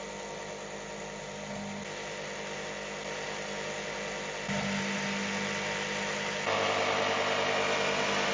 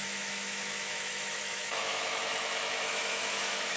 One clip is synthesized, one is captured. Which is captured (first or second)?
first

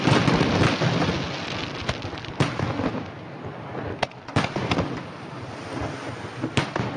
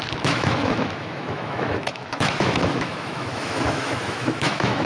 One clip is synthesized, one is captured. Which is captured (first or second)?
first